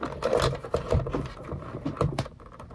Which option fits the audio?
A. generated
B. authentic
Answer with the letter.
B